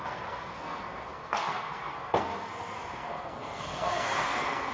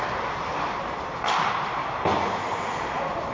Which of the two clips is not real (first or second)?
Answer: first